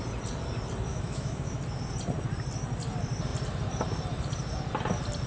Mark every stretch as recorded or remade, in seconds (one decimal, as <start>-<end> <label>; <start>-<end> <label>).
0.0-0.9 recorded; 0.9-1.6 remade; 1.6-5.3 recorded